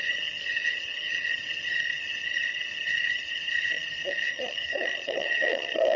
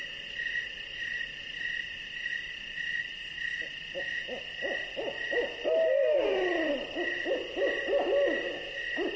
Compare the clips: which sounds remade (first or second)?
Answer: first